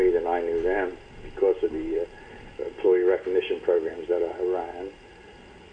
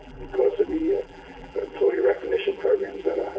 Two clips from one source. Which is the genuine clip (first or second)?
first